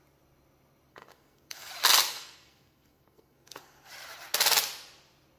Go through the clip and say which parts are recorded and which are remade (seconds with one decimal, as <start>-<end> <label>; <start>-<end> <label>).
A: 0.0-0.9 recorded; 0.9-1.7 remade; 1.7-2.1 recorded; 2.1-3.9 remade; 3.9-5.4 recorded